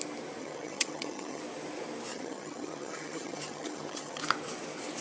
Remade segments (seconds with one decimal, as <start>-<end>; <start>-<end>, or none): 0.4-1.4; 2.1-4.2